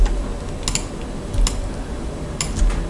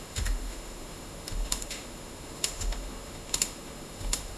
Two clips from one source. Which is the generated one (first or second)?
second